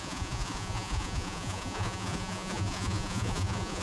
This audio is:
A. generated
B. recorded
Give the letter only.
A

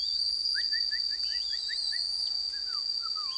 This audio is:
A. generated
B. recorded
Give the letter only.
B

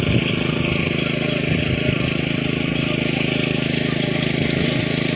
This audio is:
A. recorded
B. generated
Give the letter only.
A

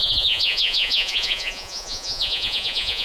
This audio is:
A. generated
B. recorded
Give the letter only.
A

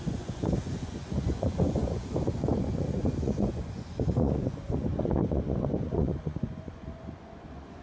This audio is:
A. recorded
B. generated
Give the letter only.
B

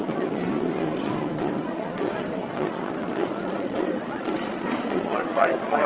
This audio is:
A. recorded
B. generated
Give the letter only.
B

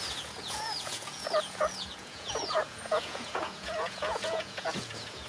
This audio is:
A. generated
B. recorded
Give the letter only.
A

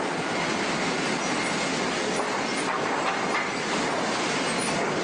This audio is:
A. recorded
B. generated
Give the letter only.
A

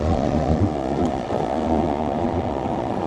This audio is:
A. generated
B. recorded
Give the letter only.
A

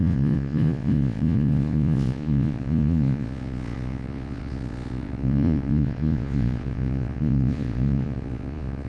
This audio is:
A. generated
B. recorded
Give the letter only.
A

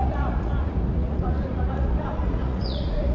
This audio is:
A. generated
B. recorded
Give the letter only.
A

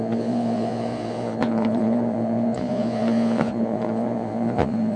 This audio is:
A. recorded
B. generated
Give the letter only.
B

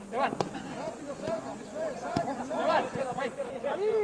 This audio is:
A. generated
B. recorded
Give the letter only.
A